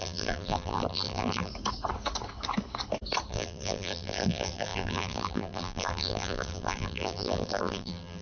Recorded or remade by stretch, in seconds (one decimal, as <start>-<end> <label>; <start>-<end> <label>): 0.0-1.5 remade; 1.5-3.3 recorded; 3.3-8.2 remade